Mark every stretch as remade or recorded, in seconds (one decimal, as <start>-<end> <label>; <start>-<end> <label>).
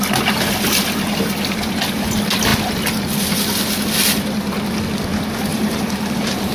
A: 0.0-5.5 recorded; 5.5-6.5 remade